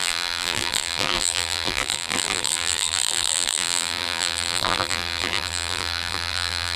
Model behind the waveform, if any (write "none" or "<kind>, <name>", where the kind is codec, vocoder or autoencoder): vocoder, BigVGAN v2